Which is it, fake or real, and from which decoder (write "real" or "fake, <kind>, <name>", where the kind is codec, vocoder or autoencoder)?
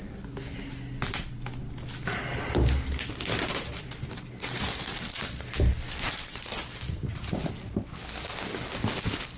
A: real